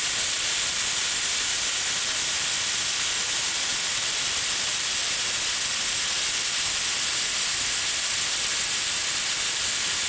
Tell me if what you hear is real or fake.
real